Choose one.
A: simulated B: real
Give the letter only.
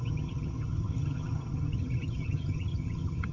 A